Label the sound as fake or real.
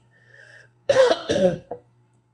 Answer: fake